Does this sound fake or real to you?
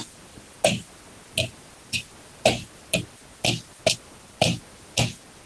real